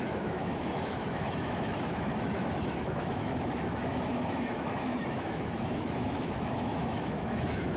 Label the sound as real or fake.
fake